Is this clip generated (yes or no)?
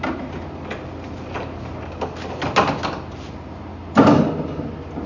no